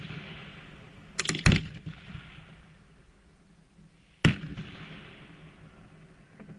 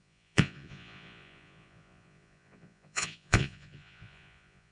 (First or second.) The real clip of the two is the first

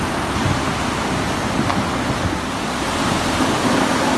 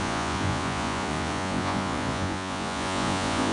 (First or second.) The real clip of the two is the first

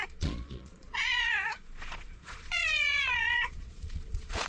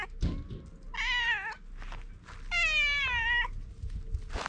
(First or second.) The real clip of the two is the second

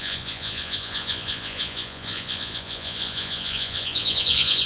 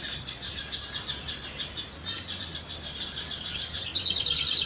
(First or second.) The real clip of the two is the second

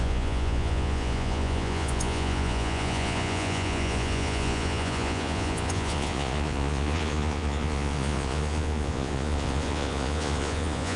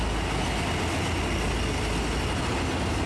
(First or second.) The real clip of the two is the second